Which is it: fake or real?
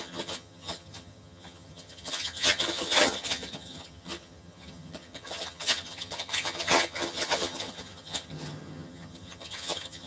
fake